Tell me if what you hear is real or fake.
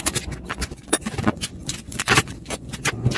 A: fake